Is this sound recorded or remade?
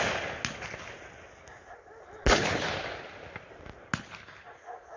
recorded